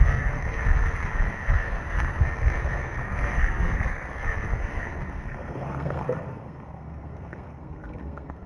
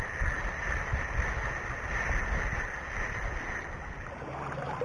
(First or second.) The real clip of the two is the second